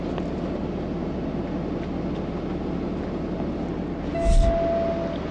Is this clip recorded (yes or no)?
yes